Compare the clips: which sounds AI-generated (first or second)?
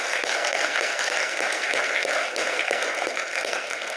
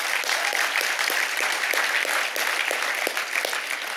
first